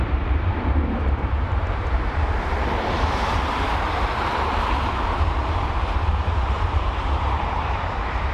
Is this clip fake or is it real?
fake